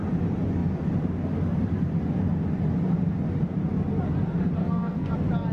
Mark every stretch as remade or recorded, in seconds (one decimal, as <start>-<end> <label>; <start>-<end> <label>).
0.0-4.6 recorded; 4.6-5.1 remade; 5.1-5.5 recorded